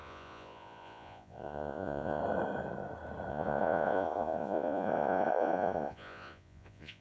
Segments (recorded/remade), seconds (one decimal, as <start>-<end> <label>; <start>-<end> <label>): 0.0-2.2 remade; 2.2-3.3 recorded; 3.3-7.0 remade